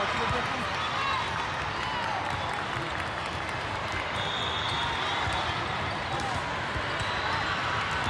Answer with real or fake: real